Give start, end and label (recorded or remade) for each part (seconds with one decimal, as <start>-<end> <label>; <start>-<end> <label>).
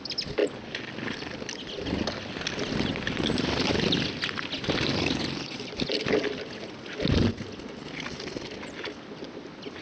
0.0-9.8 recorded